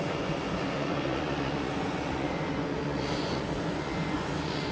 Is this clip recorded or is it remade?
remade